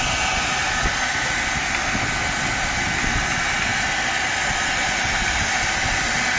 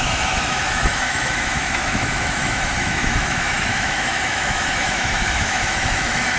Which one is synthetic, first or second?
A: second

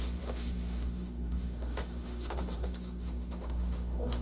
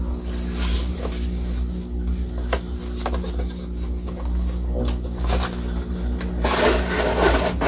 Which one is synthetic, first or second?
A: first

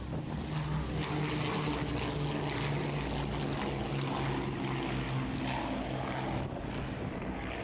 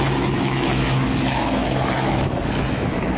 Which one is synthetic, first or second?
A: second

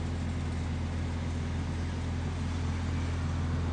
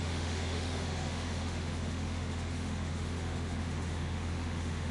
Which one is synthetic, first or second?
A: second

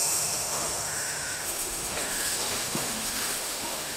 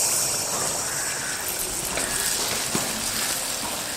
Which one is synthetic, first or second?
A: first